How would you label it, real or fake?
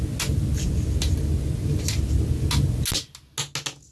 real